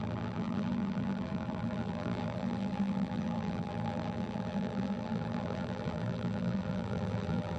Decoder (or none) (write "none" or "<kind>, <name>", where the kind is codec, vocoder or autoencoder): vocoder, BigVGAN v2